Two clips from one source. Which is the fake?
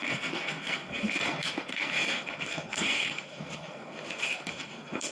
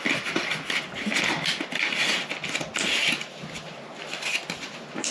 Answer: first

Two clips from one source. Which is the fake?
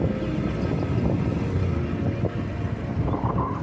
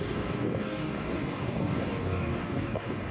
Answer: second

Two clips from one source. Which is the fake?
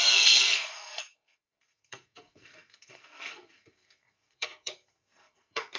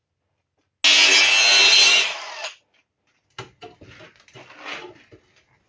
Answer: first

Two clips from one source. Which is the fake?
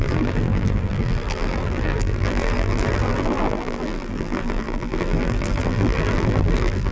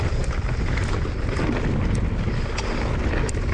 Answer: first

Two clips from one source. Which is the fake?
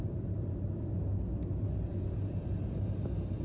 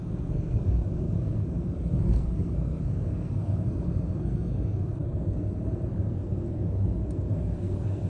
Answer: second